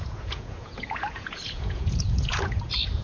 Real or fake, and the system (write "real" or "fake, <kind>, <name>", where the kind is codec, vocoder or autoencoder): fake, vocoder, Vocos